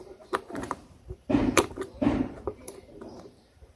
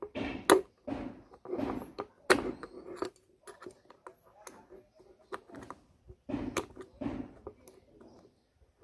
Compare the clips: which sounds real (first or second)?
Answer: second